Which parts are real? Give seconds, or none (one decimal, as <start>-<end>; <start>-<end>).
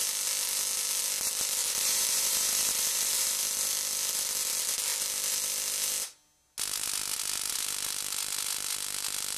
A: 0.0-1.6; 3.3-9.4